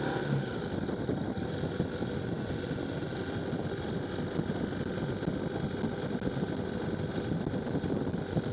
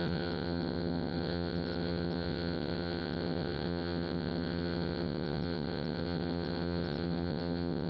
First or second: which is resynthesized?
second